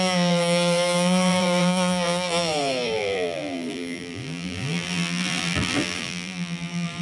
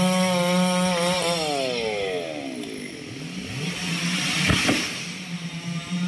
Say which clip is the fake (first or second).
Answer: first